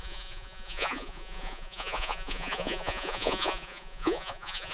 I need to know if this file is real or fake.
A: fake